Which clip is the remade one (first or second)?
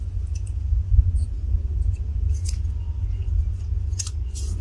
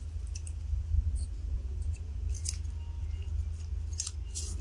first